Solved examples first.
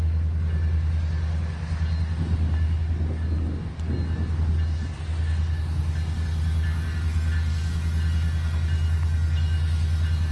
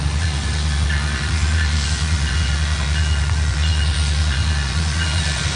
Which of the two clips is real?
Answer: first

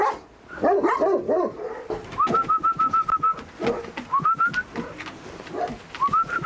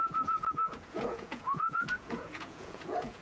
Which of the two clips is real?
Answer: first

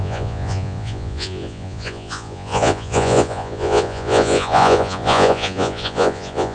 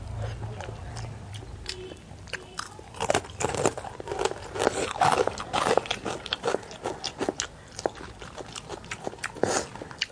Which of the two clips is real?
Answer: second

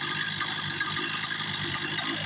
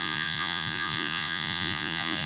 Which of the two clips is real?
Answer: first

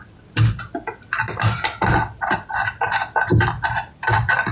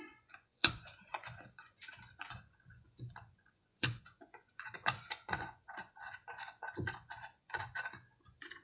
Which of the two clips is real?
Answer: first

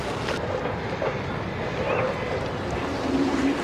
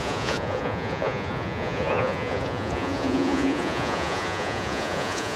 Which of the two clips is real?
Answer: first